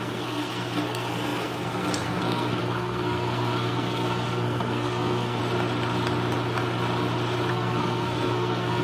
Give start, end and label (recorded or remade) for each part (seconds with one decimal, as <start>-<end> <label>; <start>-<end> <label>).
0.0-5.4 remade; 5.4-7.5 recorded; 7.5-8.8 remade